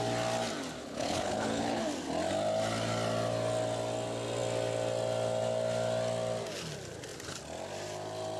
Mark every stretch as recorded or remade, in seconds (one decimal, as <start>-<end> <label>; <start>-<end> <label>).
0.0-0.8 recorded; 0.8-1.8 remade; 1.8-8.4 recorded